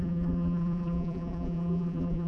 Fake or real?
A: fake